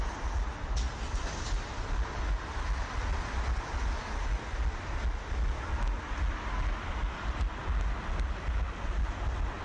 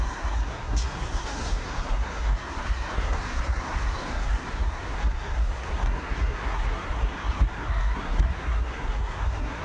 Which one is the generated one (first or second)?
second